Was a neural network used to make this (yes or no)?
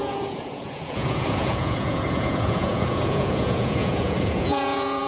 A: yes